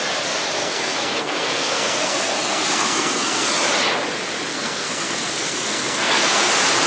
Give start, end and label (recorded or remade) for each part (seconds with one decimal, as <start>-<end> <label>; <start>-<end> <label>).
0.0-0.6 recorded; 0.6-3.5 remade; 3.5-4.5 recorded; 4.5-6.5 remade; 6.5-6.9 recorded